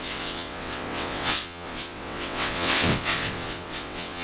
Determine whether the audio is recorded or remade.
remade